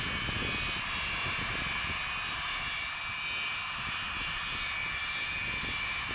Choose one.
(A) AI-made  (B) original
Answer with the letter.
B